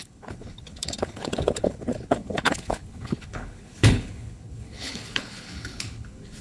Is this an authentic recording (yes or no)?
no